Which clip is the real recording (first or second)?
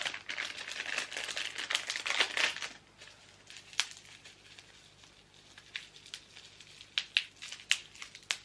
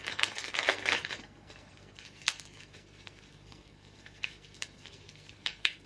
first